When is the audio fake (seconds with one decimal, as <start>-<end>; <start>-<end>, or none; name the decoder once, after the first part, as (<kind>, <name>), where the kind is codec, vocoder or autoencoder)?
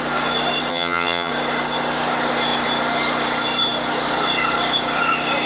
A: 0.7-1.3 (vocoder, HiFi-GAN)